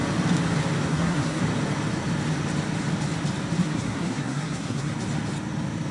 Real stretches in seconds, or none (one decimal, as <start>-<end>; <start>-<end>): 0.0-0.9; 1.4-3.6; 4.9-5.9